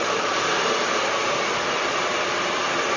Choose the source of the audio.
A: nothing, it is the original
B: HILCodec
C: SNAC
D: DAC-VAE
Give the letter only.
A